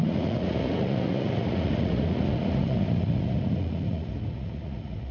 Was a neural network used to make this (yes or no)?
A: yes